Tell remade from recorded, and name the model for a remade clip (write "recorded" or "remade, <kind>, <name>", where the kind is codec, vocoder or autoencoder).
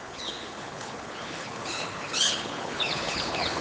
remade, codec, HILCodec